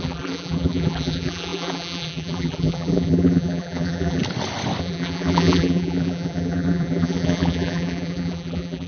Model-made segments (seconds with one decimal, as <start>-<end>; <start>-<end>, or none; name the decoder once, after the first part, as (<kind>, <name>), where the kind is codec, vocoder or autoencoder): 0.0-4.2 (vocoder, BigVGAN v2); 4.8-8.9